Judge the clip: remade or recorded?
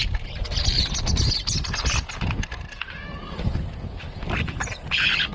recorded